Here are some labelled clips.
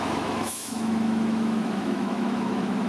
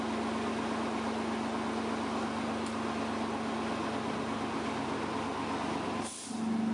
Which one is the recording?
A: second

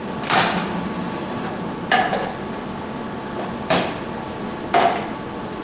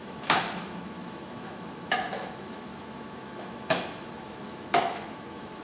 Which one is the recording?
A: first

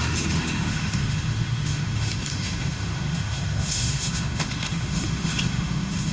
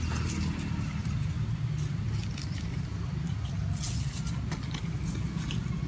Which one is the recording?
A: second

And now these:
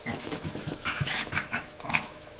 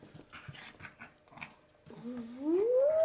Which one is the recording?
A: second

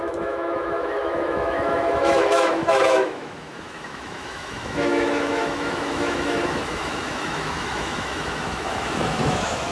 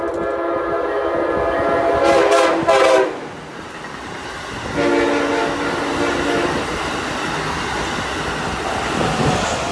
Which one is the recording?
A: second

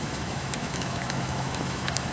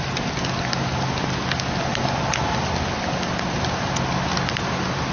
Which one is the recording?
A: second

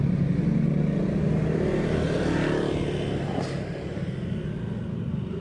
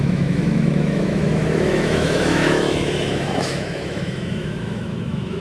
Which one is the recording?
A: first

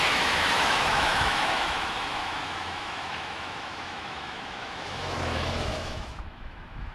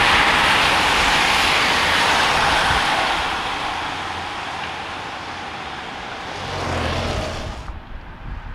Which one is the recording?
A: second